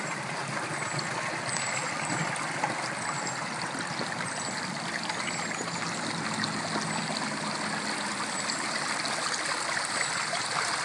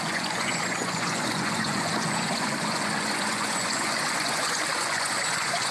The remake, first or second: second